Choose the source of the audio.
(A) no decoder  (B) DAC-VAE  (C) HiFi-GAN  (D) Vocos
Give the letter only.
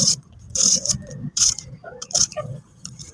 D